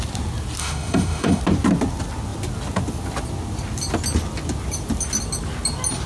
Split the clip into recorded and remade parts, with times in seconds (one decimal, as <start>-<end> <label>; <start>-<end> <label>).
0.0-0.6 recorded; 0.6-1.4 remade; 1.4-6.1 recorded